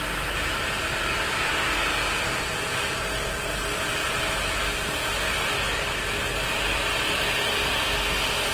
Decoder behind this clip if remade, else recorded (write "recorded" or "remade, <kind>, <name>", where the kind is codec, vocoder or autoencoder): recorded